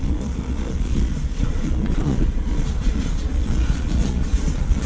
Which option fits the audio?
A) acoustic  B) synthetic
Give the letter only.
B